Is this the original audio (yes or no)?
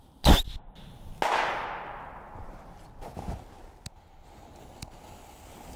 yes